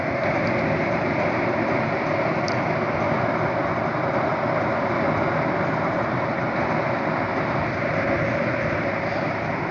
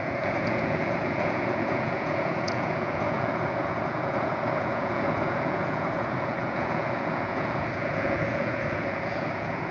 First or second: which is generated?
second